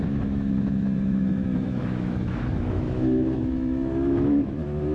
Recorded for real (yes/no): no